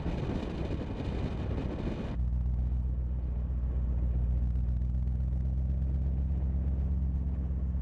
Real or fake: real